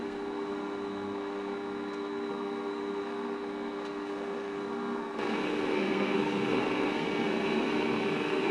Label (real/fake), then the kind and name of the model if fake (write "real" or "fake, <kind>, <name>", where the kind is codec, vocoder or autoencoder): fake, codec, SNAC